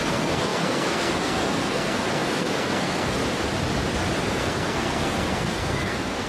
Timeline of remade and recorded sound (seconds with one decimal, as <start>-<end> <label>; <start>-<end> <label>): 0.0-3.2 remade; 3.2-4.3 recorded; 4.3-6.3 remade